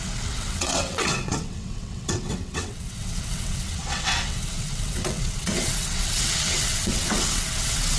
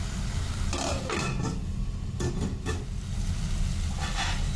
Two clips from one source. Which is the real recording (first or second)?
second